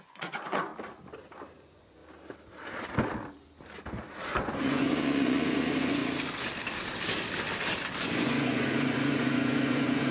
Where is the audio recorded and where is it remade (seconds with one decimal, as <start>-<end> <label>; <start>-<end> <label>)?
0.0-0.7 remade; 0.7-1.6 recorded; 1.6-2.0 remade; 2.0-4.2 recorded; 4.2-6.0 remade; 6.0-8.0 recorded; 8.0-10.1 remade